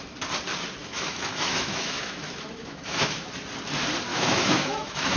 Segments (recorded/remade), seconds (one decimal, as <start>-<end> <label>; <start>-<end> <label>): 0.0-0.8 recorded; 0.8-3.3 remade; 3.3-4.1 recorded; 4.1-5.2 remade